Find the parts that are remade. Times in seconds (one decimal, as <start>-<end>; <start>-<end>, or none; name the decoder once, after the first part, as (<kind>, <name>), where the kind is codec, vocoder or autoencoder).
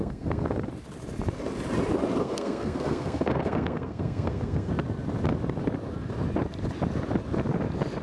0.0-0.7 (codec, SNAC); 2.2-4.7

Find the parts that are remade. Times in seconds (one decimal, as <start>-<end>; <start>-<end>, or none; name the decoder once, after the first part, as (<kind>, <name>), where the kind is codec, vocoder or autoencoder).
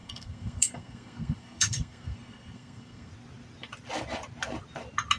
0.0-3.1 (codec, SNAC)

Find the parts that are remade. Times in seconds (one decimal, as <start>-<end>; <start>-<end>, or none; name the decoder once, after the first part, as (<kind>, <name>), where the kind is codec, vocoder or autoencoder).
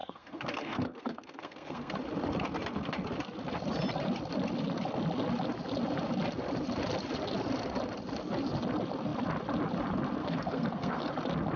0.0-1.9 (codec, SNAC); 10.2-11.1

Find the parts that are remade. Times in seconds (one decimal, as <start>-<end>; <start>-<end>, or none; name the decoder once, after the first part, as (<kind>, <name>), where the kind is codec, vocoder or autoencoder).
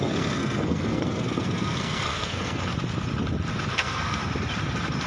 0.0-2.7 (codec, SNAC); 3.7-4.2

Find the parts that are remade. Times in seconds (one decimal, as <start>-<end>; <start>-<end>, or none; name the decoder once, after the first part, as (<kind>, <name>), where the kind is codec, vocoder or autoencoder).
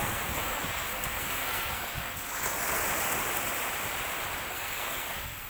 0.0-2.8 (codec, SNAC); 4.5-5.5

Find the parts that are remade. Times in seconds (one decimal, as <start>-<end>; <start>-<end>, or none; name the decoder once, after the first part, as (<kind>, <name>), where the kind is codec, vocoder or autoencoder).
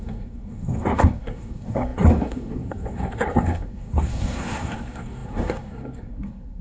0.0-6.6 (codec, SNAC)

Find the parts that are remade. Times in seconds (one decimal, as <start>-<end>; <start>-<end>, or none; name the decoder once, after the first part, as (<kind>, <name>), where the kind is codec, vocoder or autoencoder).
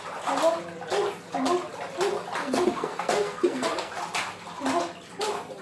2.4-3.9 (codec, SNAC)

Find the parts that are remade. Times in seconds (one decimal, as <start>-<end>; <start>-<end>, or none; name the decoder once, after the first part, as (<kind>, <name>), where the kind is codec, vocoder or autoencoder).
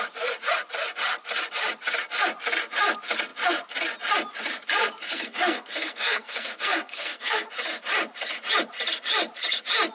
5.1-7.5 (codec, SNAC)